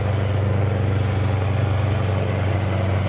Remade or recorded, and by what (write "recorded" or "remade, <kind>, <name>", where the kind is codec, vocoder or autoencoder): recorded